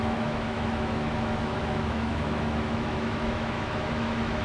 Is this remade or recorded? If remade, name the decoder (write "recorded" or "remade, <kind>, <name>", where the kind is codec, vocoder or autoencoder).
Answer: remade, autoencoder, DAC-VAE